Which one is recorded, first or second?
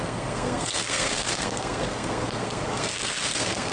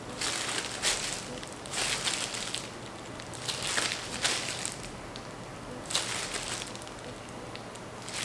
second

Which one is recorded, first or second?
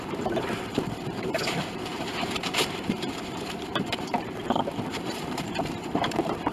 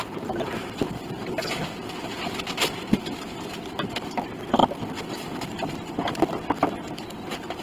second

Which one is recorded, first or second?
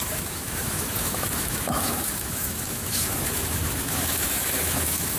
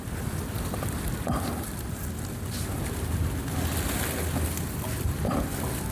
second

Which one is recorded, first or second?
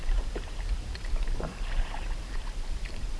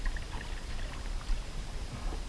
second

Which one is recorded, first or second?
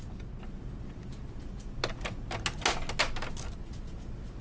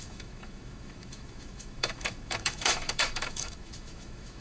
first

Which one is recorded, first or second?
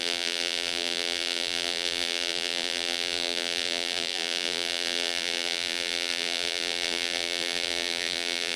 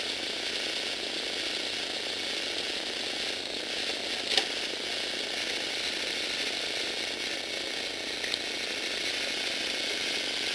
second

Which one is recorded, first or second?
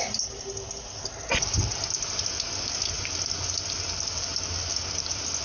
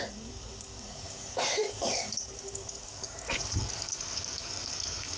first